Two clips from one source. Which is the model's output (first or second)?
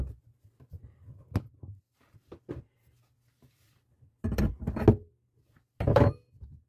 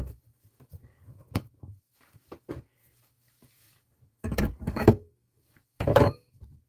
second